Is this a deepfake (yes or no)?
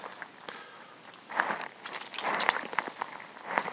no